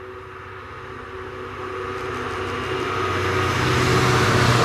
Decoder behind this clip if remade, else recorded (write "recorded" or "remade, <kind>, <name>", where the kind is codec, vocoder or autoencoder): recorded